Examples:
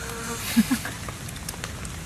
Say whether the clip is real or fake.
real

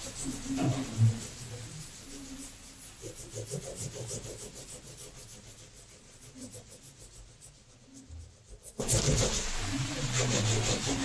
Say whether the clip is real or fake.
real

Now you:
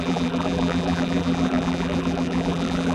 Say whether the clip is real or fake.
fake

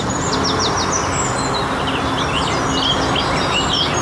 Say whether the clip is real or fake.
real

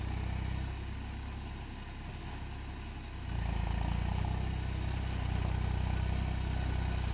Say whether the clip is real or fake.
real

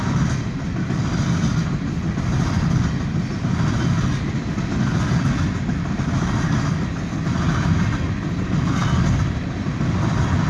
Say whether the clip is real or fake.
real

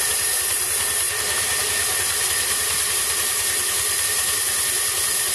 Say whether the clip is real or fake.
real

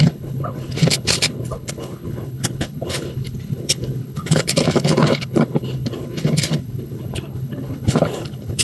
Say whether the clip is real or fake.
fake